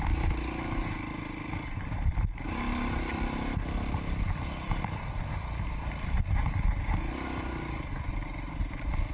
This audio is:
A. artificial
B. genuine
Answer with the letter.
B